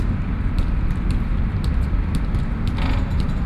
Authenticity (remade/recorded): recorded